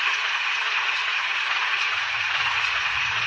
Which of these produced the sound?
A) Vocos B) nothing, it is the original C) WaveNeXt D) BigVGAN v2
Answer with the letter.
A